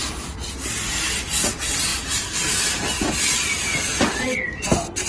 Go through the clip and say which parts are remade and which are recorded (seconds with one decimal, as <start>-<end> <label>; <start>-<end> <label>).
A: 0.0-5.1 recorded